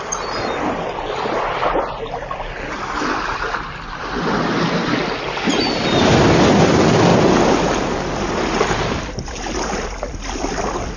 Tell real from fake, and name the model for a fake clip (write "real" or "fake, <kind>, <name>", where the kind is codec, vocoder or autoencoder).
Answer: real